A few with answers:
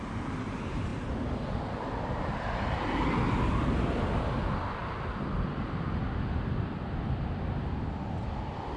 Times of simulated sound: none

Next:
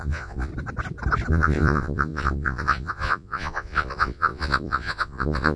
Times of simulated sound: 0.0-0.5 (vocoder, Vocos); 1.3-5.6